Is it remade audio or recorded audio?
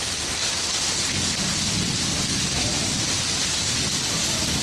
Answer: recorded